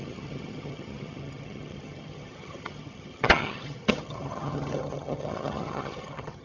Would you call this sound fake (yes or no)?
yes